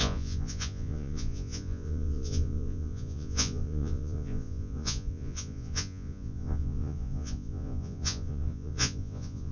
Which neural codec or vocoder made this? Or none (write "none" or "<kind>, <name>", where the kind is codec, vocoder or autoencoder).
vocoder, Vocos